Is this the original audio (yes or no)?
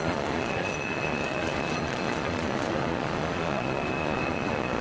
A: no